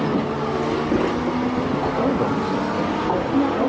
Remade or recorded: recorded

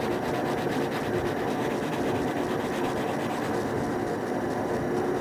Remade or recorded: recorded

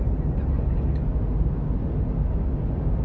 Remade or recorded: recorded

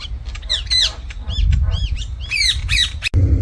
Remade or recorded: recorded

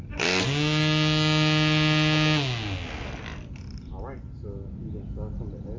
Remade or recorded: recorded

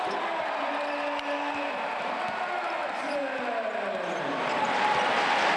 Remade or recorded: recorded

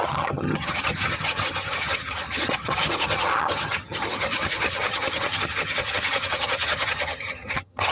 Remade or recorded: remade